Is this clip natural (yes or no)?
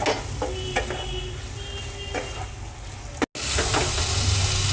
yes